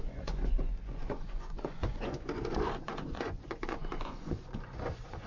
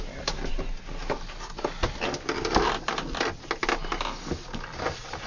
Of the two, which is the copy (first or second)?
first